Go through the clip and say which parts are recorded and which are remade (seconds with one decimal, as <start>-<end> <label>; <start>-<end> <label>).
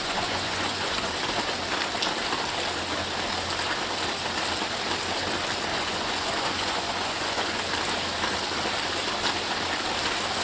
0.0-1.1 remade; 1.1-5.7 recorded; 5.7-7.6 remade; 7.6-10.4 recorded